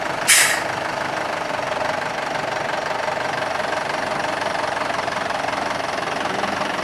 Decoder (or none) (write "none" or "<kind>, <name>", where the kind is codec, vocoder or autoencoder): none